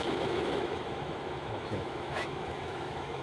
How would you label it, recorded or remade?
remade